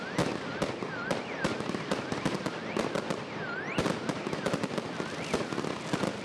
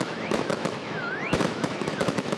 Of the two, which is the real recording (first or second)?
first